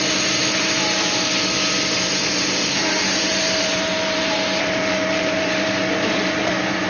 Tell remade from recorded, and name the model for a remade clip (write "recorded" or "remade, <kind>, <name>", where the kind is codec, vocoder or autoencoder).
remade, vocoder, BigVGAN v2